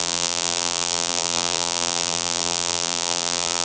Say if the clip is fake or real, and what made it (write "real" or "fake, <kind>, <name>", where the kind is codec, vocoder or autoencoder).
fake, vocoder, BigVGAN v2